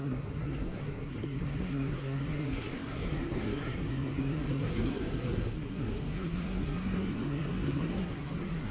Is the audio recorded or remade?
remade